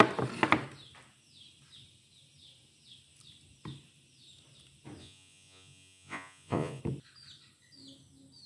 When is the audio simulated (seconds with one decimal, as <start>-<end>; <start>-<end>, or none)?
5.0-6.8